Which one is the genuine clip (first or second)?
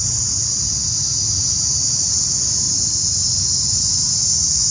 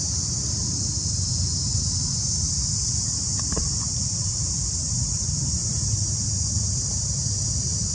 first